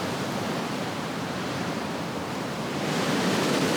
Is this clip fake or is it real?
fake